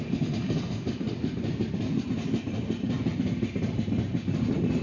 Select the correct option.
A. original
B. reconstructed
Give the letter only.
A